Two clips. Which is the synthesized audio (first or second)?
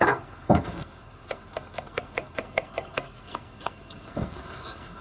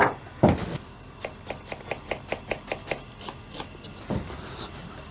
first